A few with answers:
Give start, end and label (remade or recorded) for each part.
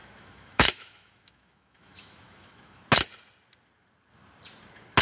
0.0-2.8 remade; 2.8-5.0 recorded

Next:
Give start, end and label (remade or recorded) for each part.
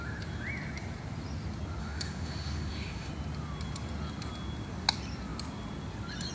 0.0-1.8 recorded; 1.8-3.1 remade; 3.1-6.3 recorded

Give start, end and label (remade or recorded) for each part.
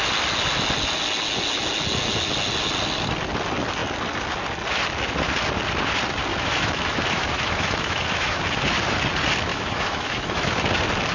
0.0-6.3 recorded; 6.3-8.4 remade; 8.4-9.5 recorded; 9.5-10.5 remade; 10.5-11.1 recorded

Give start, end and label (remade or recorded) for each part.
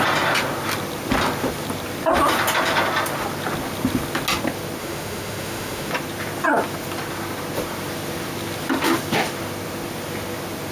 0.0-4.8 recorded; 4.8-5.9 remade; 5.9-10.7 recorded